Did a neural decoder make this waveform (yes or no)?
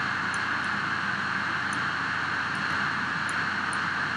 no